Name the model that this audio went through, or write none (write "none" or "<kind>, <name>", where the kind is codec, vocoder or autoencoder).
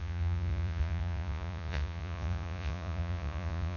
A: vocoder, Vocos